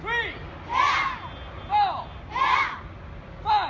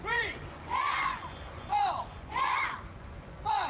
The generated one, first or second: second